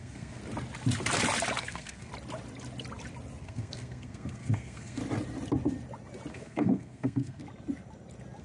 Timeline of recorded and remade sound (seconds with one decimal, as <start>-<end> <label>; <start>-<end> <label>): 0.0-0.4 remade; 0.4-1.6 recorded; 1.6-2.1 remade; 2.1-3.4 recorded; 3.4-5.0 remade; 5.0-6.3 recorded; 6.3-7.4 remade; 7.4-8.4 recorded